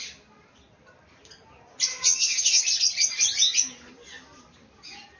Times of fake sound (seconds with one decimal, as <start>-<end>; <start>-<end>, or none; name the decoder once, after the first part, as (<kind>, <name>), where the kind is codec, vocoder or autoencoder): 1.9-2.6 (vocoder, HiFi-GAN)